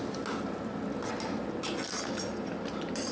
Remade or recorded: recorded